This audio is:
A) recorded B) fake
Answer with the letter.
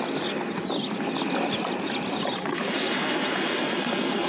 A